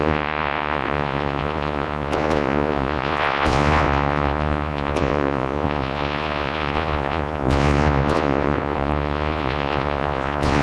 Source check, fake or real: fake